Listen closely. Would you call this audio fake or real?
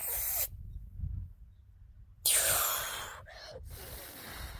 real